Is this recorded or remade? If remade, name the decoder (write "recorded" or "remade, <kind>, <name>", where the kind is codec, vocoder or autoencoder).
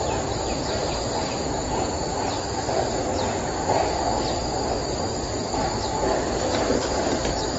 recorded